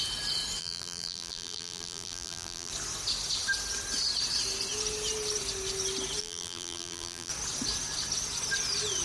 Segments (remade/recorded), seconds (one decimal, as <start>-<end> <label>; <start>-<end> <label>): 0.0-0.6 recorded; 0.6-2.7 remade; 2.7-6.2 recorded; 6.2-7.3 remade; 7.3-9.0 recorded